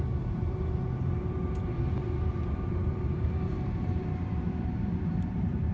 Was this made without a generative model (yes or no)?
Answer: no